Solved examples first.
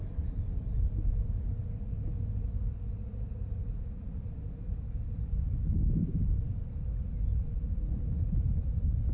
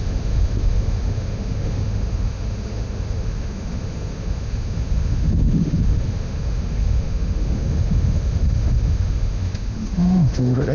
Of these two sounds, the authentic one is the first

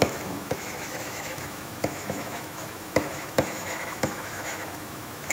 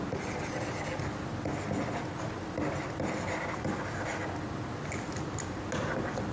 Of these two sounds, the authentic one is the second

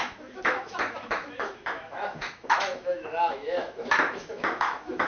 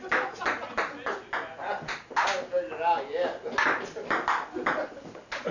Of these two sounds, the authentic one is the second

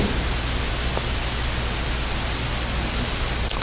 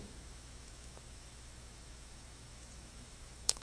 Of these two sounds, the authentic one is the first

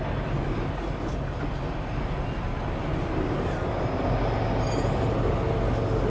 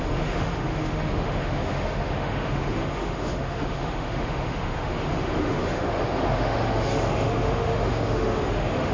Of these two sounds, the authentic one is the first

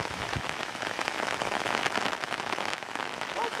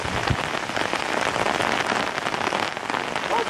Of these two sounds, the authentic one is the second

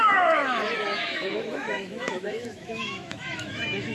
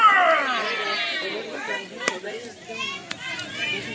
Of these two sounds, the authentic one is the second